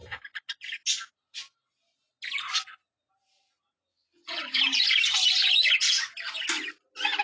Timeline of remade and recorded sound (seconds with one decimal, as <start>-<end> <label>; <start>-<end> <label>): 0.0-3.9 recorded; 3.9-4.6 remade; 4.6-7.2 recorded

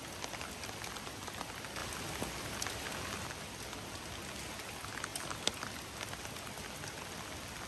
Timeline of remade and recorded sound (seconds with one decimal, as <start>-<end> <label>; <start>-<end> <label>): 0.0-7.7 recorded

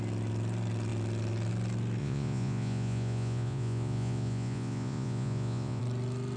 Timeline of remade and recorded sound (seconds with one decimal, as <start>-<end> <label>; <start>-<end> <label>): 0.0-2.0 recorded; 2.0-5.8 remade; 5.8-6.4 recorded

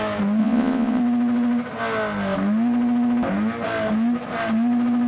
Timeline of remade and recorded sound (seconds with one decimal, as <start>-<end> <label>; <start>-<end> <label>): 0.0-0.4 recorded; 0.4-1.0 remade; 1.0-5.1 recorded

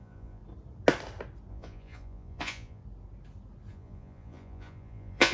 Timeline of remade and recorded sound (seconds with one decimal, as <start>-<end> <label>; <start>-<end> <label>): 0.0-0.4 remade; 0.4-1.5 recorded; 1.5-2.8 remade; 2.8-3.7 recorded; 3.7-5.3 remade

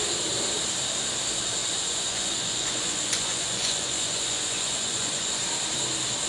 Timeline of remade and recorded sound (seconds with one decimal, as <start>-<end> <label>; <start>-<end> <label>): 0.0-1.6 recorded; 1.6-5.4 remade; 5.4-6.3 recorded

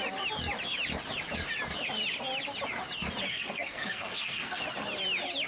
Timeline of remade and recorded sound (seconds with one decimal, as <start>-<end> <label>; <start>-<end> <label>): 0.0-3.3 recorded; 3.3-4.6 remade; 4.6-5.5 recorded